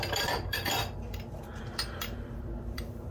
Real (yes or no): no